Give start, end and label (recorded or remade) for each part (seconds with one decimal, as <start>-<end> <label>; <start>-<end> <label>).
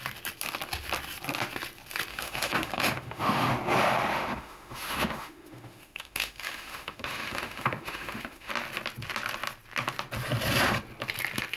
0.0-2.1 recorded; 2.1-3.5 remade; 3.5-4.1 recorded; 4.1-8.5 remade; 8.5-11.6 recorded